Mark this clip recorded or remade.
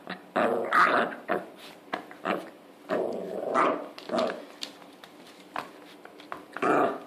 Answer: recorded